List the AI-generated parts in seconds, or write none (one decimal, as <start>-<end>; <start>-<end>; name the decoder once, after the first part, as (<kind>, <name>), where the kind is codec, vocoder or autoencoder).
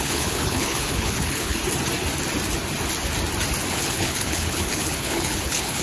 0.0-1.6 (codec, HILCodec); 3.7-5.8